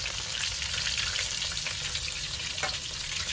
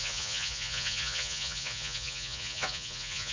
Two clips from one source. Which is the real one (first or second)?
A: first